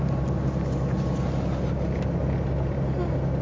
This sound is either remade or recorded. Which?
recorded